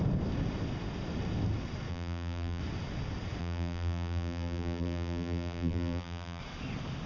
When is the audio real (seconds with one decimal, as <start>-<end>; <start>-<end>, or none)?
0.0-1.9; 2.6-3.4; 6.4-7.1